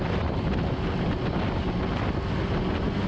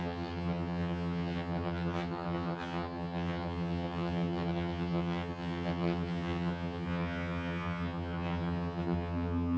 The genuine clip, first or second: first